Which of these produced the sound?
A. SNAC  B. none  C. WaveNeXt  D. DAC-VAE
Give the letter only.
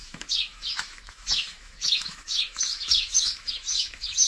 D